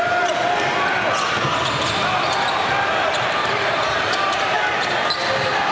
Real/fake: real